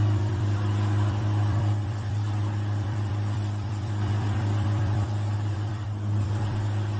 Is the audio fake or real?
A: fake